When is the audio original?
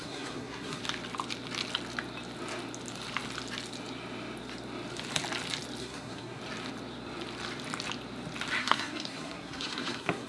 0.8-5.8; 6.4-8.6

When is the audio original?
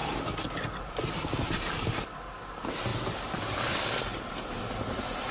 0.0-5.3